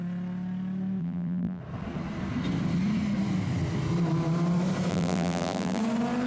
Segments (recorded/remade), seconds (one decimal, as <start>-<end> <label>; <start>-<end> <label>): 0.0-1.0 recorded; 1.0-1.6 remade; 1.6-4.9 recorded; 4.9-5.8 remade; 5.8-6.3 recorded